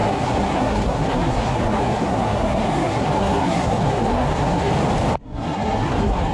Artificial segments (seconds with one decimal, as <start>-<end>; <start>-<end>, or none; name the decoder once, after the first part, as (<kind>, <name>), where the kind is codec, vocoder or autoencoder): 0.0-4.7 (codec, SNAC); 5.2-6.3